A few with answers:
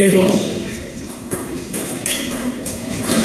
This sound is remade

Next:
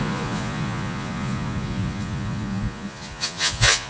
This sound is remade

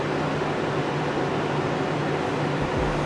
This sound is recorded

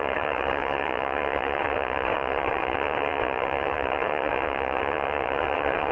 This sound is remade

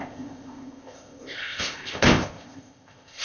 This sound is remade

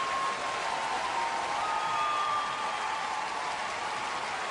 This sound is recorded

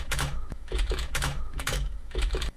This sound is remade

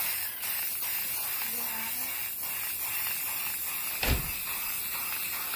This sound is recorded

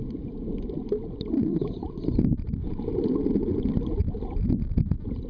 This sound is recorded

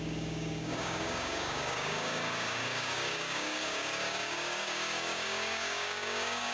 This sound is remade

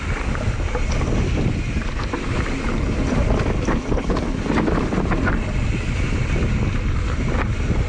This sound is recorded